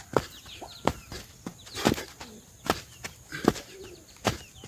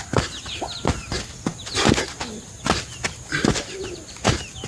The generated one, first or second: first